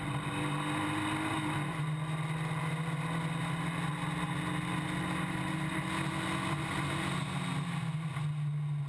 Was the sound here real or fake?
real